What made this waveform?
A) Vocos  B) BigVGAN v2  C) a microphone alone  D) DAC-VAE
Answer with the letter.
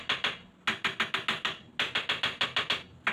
C